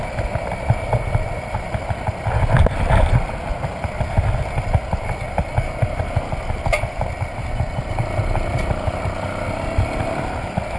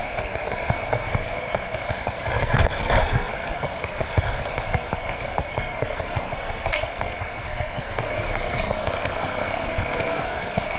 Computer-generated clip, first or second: second